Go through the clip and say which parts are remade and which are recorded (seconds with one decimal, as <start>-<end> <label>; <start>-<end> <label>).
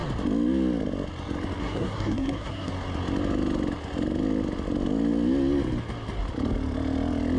0.0-1.6 recorded; 1.6-2.7 remade; 2.7-7.4 recorded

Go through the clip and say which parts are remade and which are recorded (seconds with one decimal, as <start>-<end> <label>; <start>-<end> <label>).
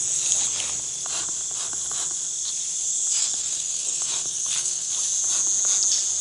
0.0-3.2 recorded; 3.2-4.9 remade; 4.9-6.2 recorded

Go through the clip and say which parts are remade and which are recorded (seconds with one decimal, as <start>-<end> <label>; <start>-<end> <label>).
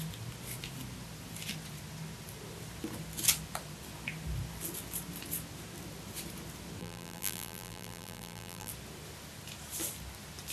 0.0-6.8 recorded; 6.8-8.7 remade; 8.7-10.5 recorded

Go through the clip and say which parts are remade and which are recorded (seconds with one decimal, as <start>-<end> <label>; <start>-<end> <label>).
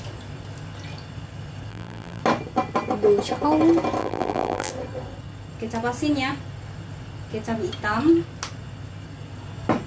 0.0-1.7 recorded; 1.7-2.2 remade; 2.2-4.0 recorded; 4.0-4.7 remade; 4.7-9.9 recorded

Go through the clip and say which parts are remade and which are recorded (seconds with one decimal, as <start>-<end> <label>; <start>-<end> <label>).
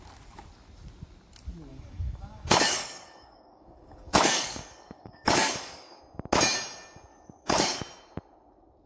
0.0-1.7 recorded; 1.7-6.0 remade; 6.0-7.1 recorded; 7.1-7.8 remade; 7.8-8.9 recorded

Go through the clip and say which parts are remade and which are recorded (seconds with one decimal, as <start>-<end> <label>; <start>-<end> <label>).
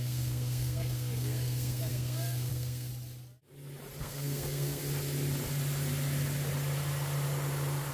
0.0-2.9 remade; 2.9-4.0 recorded; 4.0-4.8 remade; 4.8-7.9 recorded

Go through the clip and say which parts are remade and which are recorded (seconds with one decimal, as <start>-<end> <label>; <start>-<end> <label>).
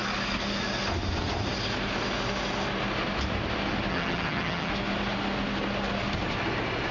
0.0-3.9 recorded; 3.9-4.7 remade; 4.7-6.9 recorded